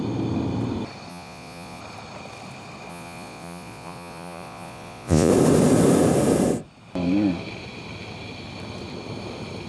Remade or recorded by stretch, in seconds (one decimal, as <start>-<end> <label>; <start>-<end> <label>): 0.0-1.1 recorded; 1.1-1.8 remade; 1.8-2.9 recorded; 2.9-5.3 remade; 5.3-9.7 recorded